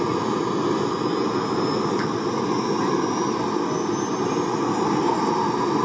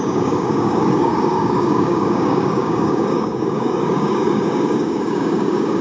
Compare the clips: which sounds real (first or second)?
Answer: first